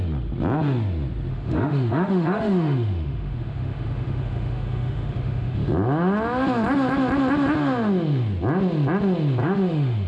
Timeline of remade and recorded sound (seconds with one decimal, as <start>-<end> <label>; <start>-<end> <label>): 0.0-1.3 recorded; 1.3-5.7 remade; 5.7-9.4 recorded; 9.4-10.1 remade